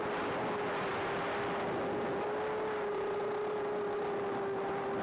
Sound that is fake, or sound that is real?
real